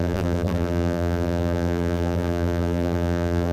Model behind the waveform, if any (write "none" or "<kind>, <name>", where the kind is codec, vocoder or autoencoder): vocoder, BigVGAN v2